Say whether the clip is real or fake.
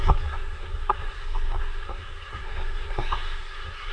fake